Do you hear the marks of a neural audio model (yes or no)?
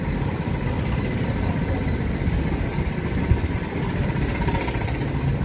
no